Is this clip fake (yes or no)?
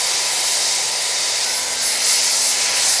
no